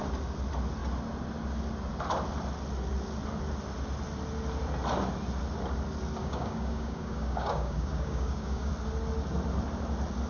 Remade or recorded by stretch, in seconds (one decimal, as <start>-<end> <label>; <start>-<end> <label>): 0.0-6.2 recorded; 6.2-8.7 remade; 8.7-10.3 recorded